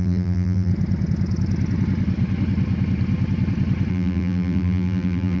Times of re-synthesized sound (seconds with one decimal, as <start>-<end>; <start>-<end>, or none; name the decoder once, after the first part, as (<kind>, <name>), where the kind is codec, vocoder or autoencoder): 0.0-0.7 (vocoder, BigVGAN v2); 3.9-5.4